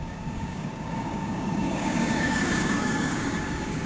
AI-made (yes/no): yes